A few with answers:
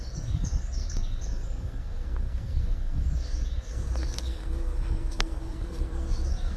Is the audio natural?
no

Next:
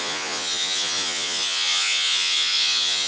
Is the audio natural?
no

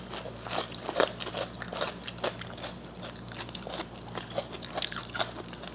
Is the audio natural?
yes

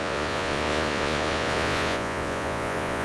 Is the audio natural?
no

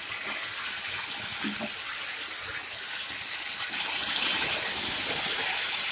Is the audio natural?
yes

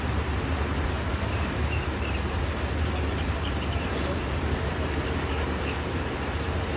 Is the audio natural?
no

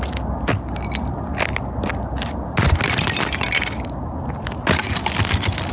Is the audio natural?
yes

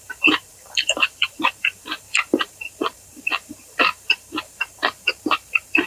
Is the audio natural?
no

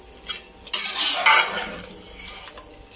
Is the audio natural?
yes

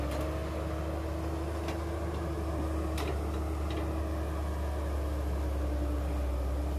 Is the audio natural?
yes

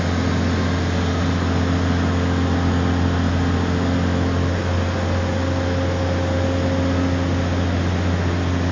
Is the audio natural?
yes